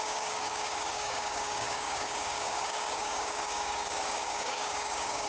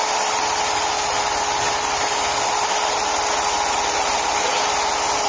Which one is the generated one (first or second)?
first